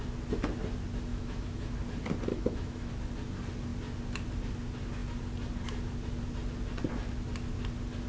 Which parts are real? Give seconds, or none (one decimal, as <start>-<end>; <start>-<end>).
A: 0.0-1.1; 1.7-2.3; 2.9-8.1